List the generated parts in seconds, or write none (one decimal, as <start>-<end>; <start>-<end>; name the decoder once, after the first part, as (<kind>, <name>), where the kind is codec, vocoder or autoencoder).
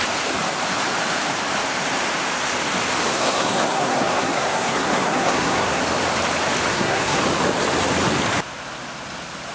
3.1-5.8 (codec, SNAC); 6.7-7.2